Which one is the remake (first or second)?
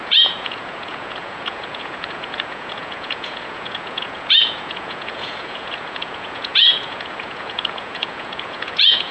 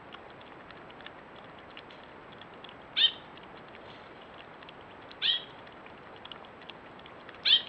first